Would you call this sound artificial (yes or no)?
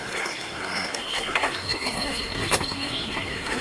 yes